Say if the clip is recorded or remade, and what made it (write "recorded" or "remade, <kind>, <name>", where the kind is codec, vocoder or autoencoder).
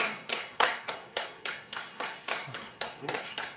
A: remade, codec, SNAC